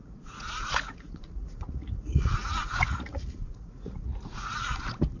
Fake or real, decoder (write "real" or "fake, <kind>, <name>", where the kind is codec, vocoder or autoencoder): fake, vocoder, Vocos